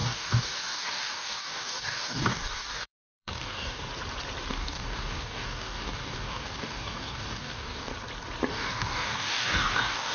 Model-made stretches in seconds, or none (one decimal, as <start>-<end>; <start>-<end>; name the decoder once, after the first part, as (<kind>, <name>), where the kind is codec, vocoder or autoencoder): 0.0-3.9 (codec, DAC); 4.5-7.9; 8.5-10.1